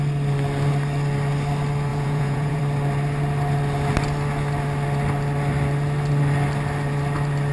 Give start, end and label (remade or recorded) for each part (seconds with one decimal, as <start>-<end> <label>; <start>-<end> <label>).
0.0-1.9 recorded; 1.9-2.6 remade; 2.6-7.5 recorded